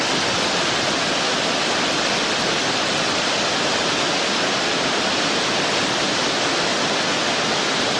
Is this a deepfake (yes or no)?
no